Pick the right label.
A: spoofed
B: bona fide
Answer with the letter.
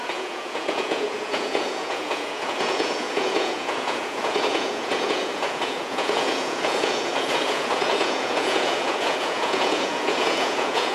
A